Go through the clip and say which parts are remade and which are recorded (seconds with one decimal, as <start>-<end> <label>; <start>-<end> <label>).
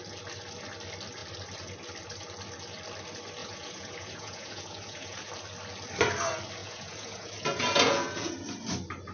0.0-3.4 recorded; 3.4-5.3 remade; 5.3-6.6 recorded; 6.6-8.3 remade; 8.3-9.1 recorded